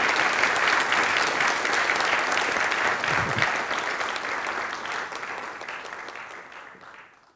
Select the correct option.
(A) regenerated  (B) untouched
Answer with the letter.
B